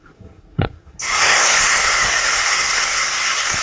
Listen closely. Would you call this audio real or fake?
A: fake